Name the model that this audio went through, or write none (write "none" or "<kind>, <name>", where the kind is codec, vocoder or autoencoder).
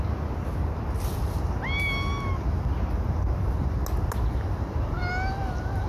none